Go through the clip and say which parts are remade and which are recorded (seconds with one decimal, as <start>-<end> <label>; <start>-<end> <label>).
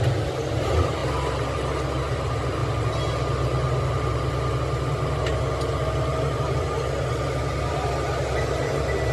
0.0-9.1 recorded